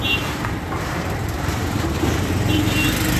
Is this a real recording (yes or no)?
no